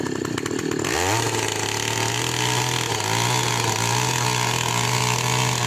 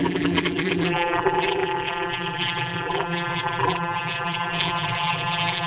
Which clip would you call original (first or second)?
first